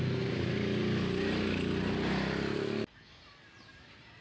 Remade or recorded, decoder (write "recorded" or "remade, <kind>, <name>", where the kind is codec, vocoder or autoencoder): recorded